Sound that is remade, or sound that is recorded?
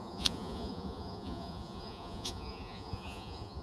remade